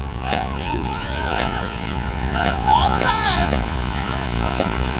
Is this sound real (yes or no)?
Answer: no